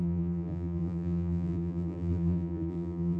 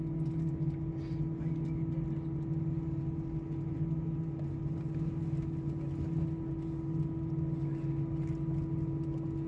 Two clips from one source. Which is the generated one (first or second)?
first